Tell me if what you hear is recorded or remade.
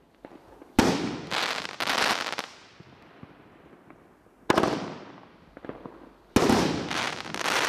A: recorded